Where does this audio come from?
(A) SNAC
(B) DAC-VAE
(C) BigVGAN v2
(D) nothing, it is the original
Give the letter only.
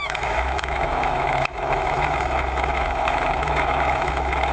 B